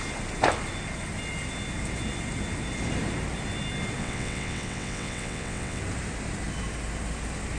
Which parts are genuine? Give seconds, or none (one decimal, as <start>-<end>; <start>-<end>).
0.0-4.0; 5.8-7.6